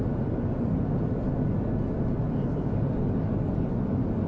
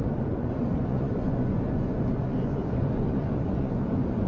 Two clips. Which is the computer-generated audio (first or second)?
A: second